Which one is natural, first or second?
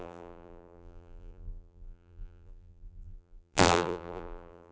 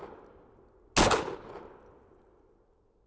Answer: second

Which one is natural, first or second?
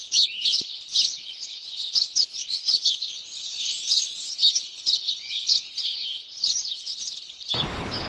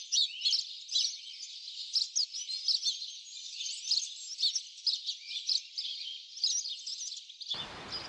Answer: second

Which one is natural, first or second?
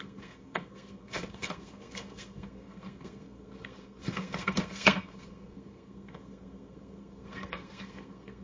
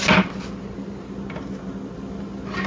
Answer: second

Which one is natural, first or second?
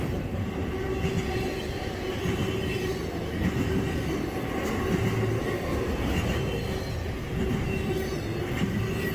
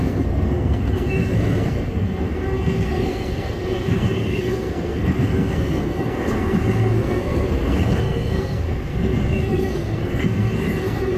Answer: first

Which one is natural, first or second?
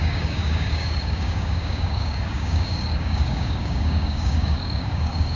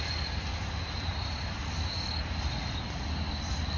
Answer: second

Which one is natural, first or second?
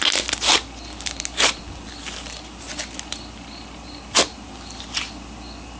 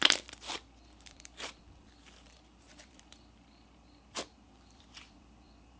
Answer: first